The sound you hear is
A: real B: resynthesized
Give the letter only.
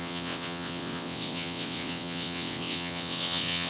B